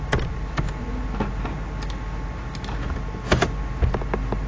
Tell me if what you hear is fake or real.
real